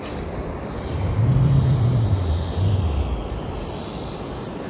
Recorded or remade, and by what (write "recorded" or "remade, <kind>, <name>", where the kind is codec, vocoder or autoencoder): recorded